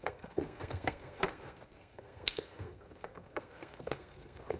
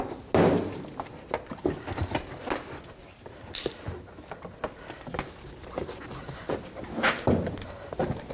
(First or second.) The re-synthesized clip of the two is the first